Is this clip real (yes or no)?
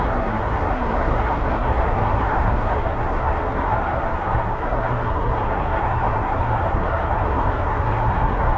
no